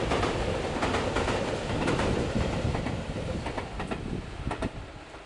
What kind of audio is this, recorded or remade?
remade